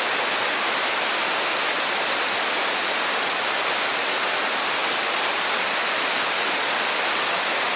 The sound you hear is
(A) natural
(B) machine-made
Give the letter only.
A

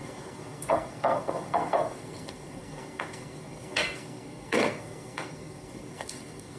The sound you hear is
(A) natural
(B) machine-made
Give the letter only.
B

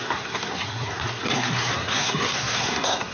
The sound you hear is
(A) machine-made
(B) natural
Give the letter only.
A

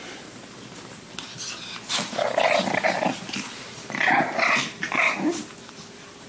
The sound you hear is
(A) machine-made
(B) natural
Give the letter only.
B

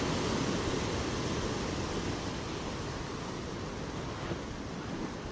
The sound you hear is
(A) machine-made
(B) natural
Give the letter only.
B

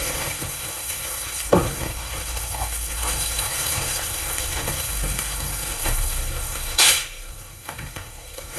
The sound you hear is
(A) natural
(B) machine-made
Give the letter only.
B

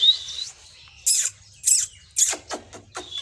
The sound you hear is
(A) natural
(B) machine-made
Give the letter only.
A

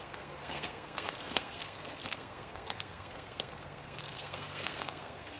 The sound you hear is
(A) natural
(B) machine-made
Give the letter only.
B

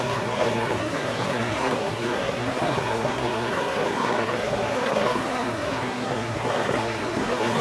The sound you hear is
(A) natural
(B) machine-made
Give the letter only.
B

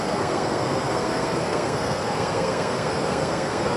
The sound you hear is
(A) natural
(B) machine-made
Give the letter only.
B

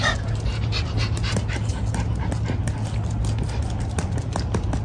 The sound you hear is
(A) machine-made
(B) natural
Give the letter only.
B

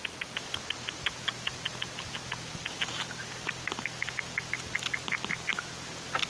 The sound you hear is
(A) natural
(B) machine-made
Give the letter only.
A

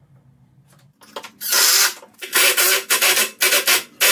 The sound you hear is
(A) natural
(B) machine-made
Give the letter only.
A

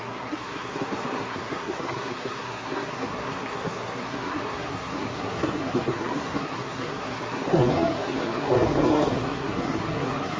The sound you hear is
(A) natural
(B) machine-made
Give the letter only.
B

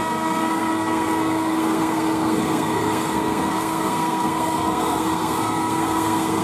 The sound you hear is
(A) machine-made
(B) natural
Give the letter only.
A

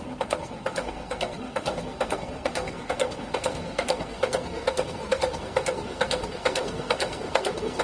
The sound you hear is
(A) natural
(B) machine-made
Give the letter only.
B